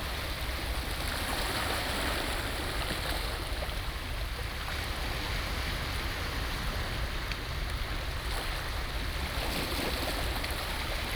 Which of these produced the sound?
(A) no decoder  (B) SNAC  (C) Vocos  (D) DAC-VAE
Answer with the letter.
A